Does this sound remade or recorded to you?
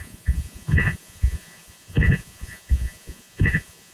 remade